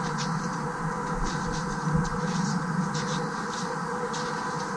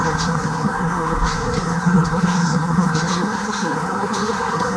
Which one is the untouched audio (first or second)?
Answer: first